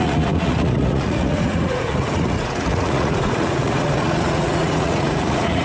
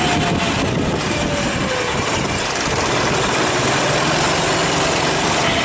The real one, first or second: second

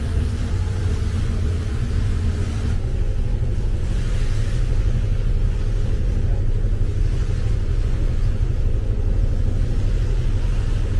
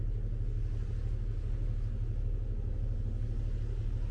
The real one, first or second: second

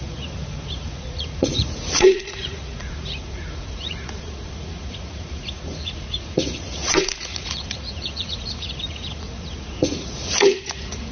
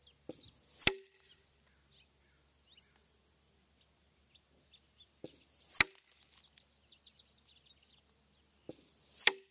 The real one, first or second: second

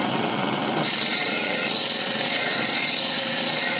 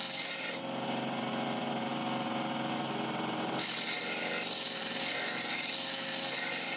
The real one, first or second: second